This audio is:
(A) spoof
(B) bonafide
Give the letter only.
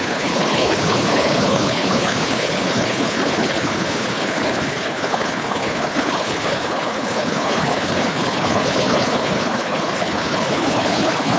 A